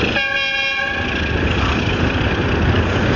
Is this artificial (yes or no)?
no